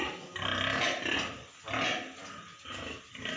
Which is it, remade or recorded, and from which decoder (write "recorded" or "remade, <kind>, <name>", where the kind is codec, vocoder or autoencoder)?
recorded